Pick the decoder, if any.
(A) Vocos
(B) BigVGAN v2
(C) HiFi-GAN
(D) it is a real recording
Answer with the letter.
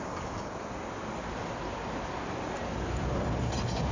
D